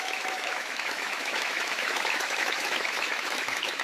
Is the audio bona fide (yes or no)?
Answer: no